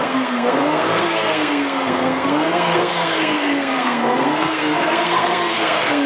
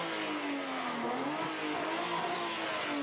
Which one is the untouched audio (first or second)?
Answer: second